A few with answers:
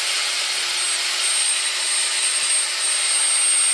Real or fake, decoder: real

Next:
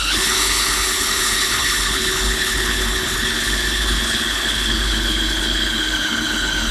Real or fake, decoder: fake, codec, HILCodec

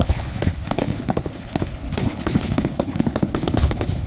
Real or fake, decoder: fake, codec, HILCodec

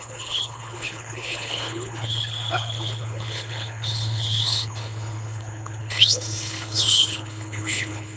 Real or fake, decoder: fake, codec, HILCodec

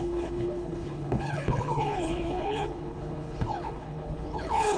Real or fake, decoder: fake, codec, HILCodec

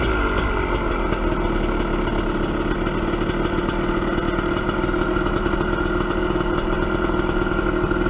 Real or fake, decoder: real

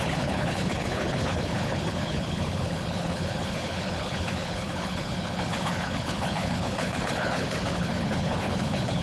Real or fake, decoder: fake, codec, HILCodec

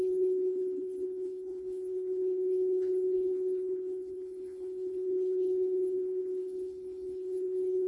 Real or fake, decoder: fake, codec, HILCodec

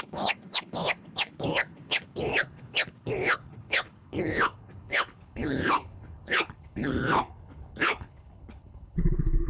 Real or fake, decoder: fake, codec, HILCodec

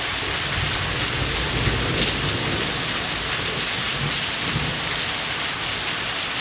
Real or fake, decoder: real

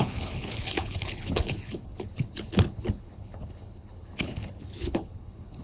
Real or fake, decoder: fake, codec, HILCodec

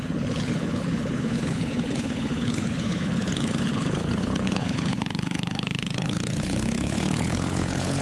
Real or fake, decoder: fake, codec, HILCodec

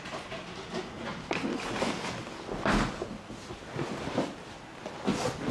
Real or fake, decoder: real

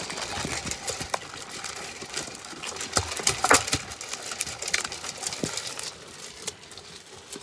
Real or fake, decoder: real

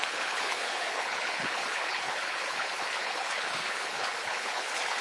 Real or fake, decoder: fake, codec, HILCodec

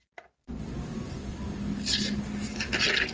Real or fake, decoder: real